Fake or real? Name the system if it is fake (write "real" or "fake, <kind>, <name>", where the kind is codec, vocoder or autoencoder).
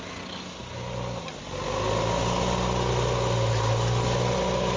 real